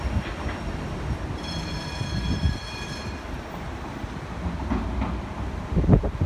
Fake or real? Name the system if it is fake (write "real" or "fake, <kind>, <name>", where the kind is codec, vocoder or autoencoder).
real